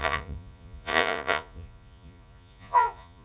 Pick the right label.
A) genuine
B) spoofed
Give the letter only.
B